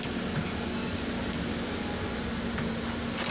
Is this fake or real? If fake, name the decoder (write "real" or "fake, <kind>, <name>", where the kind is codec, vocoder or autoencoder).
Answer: real